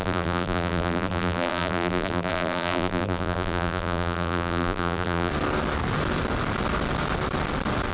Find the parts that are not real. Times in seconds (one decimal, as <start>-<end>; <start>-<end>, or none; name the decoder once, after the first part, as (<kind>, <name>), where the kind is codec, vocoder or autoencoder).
0.0-5.3 (vocoder, BigVGAN v2)